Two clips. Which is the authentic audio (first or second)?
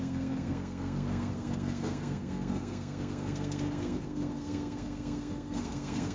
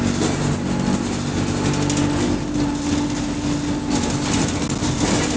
second